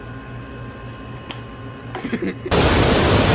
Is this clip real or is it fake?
real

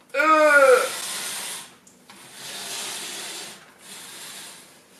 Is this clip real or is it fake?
real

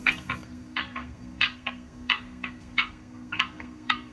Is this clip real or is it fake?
fake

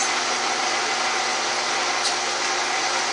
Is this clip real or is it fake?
real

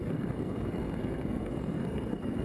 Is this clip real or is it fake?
fake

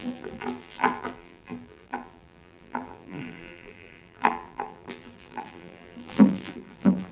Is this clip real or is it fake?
fake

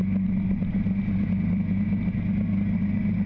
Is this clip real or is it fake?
real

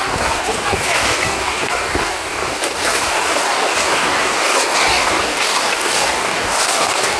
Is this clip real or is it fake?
fake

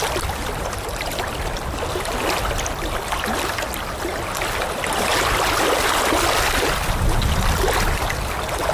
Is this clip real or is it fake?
real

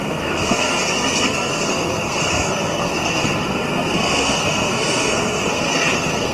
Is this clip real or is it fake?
fake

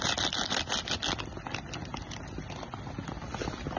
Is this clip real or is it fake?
real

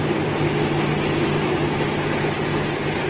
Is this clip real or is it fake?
real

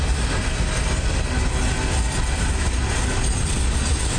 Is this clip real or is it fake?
real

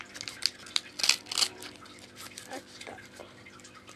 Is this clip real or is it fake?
real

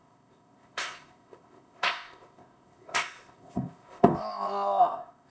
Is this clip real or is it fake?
fake